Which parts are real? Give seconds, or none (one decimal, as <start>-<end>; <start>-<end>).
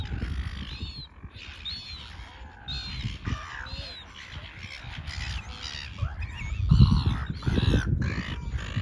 0.0-8.8